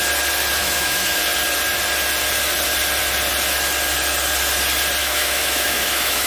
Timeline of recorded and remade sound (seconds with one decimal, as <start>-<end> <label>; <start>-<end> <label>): 0.0-0.6 recorded; 0.6-1.2 remade; 1.2-5.0 recorded; 5.0-6.3 remade